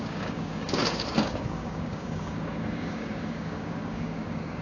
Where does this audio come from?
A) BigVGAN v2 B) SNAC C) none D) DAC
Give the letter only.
D